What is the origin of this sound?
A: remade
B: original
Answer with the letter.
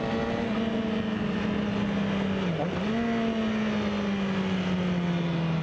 B